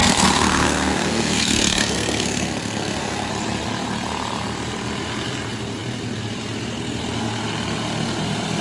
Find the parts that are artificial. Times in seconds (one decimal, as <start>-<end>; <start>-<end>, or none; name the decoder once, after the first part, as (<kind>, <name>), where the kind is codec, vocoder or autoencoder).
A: 0.0-3.3 (codec, SNAC)